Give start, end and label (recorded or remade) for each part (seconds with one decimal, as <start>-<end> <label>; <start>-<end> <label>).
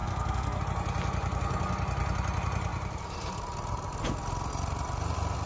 0.0-0.6 remade; 0.6-5.5 recorded